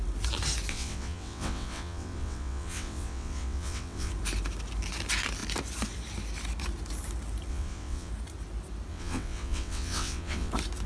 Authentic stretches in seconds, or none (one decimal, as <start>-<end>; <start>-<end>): 0.0-0.7; 4.1-7.5; 8.1-8.9; 10.5-10.9